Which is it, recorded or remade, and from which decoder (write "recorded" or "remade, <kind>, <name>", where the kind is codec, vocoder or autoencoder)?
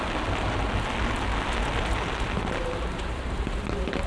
recorded